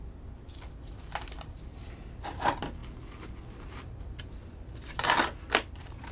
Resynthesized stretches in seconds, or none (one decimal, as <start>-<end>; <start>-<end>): none

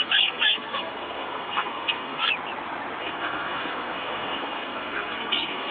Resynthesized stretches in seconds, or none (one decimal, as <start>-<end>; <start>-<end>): 0.0-2.3; 3.0-5.7